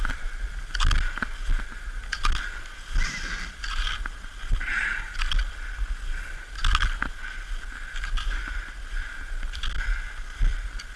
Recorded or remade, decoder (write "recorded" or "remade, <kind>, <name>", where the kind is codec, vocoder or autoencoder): recorded